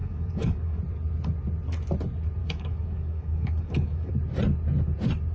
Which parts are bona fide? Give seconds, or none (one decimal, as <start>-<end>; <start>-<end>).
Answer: 0.8-2.4; 4.1-5.3